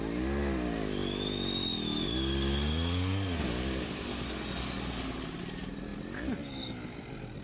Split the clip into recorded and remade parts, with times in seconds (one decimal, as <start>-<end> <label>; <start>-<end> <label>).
0.0-7.4 recorded